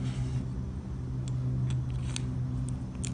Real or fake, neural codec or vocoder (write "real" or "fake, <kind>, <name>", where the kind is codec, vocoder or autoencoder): real